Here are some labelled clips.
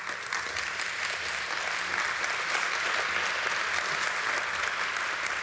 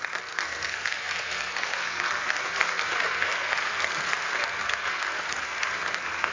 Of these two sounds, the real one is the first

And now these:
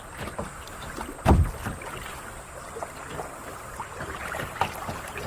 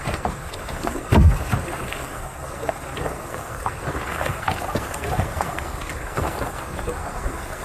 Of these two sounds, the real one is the first